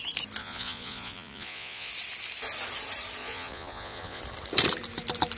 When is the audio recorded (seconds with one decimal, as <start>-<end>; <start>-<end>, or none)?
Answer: 0.0-0.4; 1.9-3.2; 4.2-5.4